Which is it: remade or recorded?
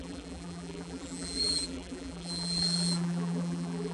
remade